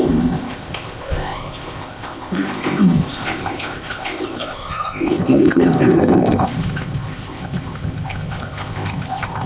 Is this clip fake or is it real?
fake